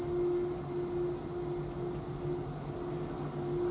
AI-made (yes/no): no